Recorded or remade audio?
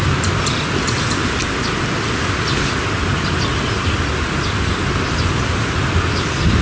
recorded